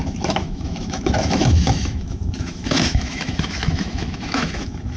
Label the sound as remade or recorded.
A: remade